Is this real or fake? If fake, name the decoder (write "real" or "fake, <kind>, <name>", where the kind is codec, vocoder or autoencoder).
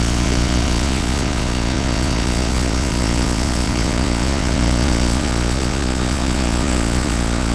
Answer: fake, vocoder, Vocos